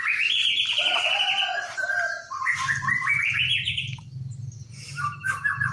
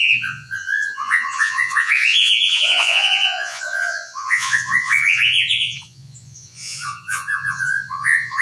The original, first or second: first